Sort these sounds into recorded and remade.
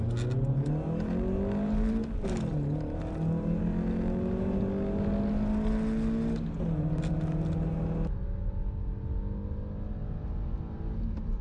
recorded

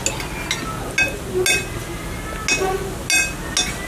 recorded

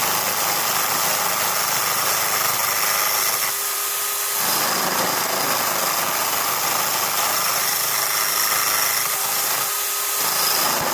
recorded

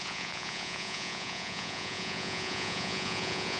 remade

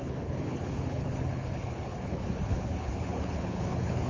remade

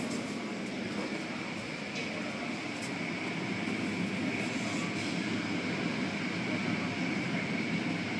recorded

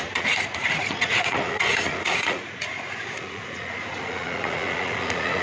remade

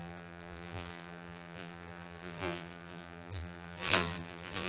remade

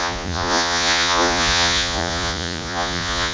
remade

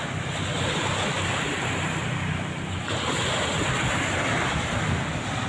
recorded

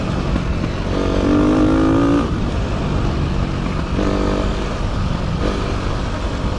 recorded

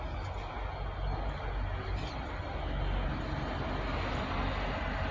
recorded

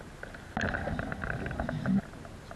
recorded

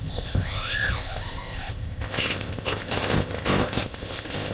remade